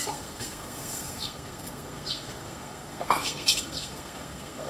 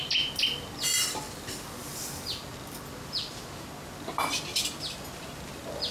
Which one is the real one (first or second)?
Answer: second